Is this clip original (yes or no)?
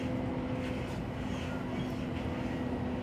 yes